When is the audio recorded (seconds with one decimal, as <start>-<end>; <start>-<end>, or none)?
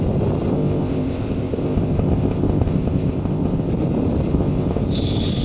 0.0-0.5; 3.7-4.3; 4.8-5.4